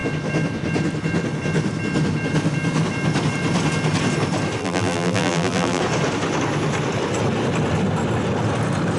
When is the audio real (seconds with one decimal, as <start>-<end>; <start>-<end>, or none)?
0.0-4.6; 5.8-9.0